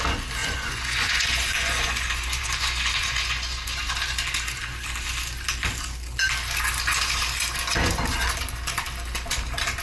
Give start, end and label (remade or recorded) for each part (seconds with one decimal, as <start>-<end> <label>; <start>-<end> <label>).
0.0-0.4 recorded; 0.4-3.9 remade; 3.9-9.8 recorded